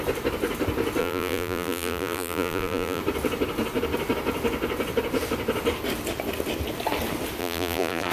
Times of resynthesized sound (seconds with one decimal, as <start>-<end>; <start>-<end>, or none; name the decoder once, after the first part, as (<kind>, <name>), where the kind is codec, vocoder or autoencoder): 1.0-3.0 (vocoder, BigVGAN v2); 7.4-8.1